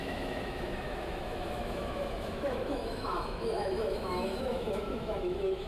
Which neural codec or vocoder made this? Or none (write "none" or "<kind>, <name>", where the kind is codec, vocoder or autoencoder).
autoencoder, DAC-VAE